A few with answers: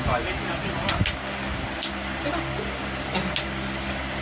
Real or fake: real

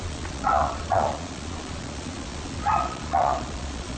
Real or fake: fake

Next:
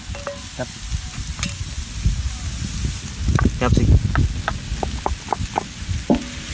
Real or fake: real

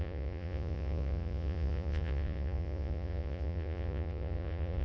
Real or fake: fake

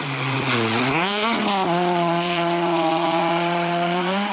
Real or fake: fake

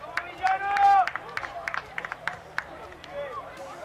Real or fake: fake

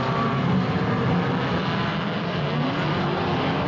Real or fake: real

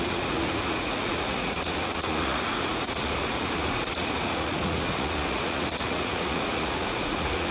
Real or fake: fake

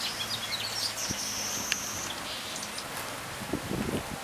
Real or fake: real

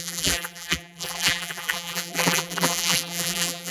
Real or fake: fake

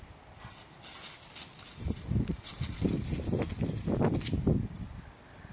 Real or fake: real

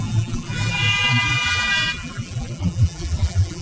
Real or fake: fake